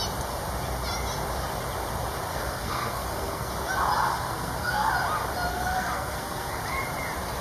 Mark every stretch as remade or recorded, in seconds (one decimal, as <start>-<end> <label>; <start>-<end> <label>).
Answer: 0.0-2.3 recorded; 2.3-3.5 remade; 3.5-4.1 recorded; 4.1-4.9 remade; 4.9-5.5 recorded; 5.5-6.6 remade; 6.6-7.4 recorded